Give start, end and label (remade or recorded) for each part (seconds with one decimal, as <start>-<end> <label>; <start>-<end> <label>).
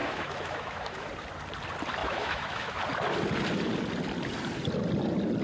0.0-1.1 remade; 1.1-2.0 recorded; 2.0-2.8 remade; 2.8-5.4 recorded